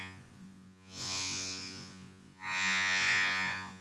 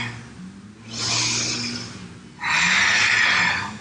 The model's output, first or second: first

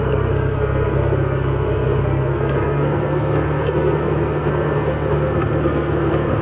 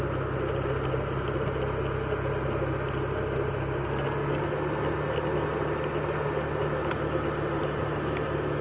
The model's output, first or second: first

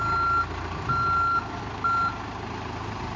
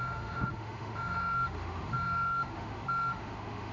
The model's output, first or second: second